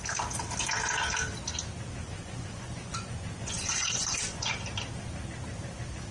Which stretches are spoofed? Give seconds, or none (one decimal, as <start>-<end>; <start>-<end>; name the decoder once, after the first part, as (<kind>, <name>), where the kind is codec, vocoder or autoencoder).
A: 2.0-4.6 (vocoder, Vocos)